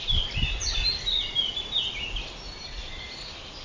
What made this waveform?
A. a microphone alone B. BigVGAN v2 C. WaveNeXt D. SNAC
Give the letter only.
A